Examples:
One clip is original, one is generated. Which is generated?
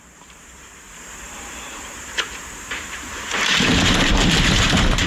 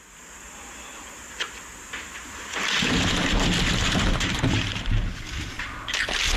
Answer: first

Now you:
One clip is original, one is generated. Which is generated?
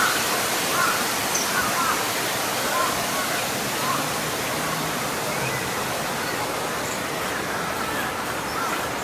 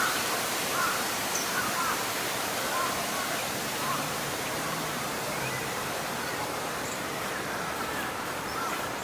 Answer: second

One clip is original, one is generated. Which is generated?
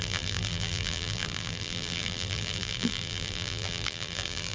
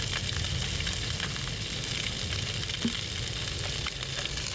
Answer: first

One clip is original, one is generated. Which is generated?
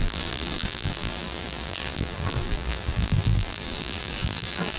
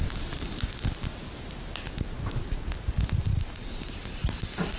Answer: first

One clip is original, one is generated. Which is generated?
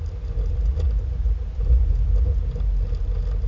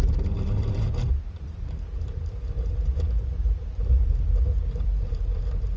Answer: second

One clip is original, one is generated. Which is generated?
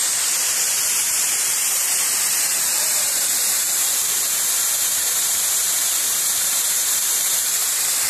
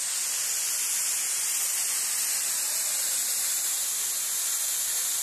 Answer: first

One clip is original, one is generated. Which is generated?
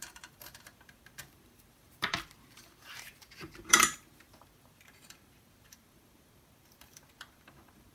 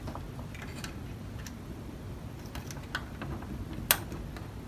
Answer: first